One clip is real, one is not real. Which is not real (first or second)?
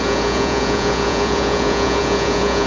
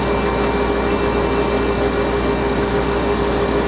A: first